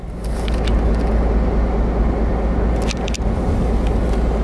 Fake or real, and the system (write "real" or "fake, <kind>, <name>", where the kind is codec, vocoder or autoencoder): real